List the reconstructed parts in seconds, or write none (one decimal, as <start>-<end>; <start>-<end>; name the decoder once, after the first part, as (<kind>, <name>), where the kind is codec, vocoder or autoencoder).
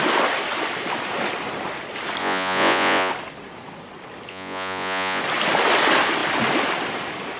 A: 2.2-3.1 (vocoder, Vocos); 4.3-5.2